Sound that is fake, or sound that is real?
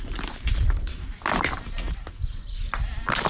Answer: real